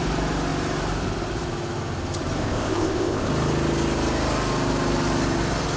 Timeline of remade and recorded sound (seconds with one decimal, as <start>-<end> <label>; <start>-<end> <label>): 0.0-2.4 recorded; 2.4-3.3 remade; 3.3-5.8 recorded